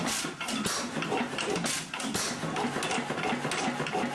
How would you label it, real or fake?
real